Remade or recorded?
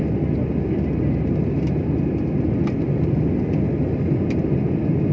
recorded